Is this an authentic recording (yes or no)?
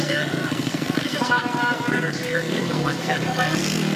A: no